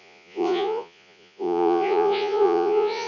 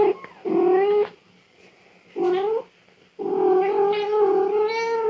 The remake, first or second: first